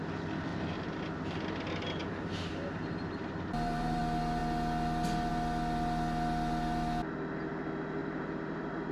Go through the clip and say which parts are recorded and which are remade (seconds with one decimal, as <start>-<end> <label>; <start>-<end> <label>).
0.0-0.5 recorded; 0.5-1.0 remade; 1.0-2.0 recorded; 2.0-4.0 remade; 4.0-8.0 recorded; 8.0-8.9 remade